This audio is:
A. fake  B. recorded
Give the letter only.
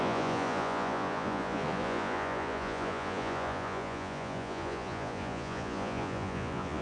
A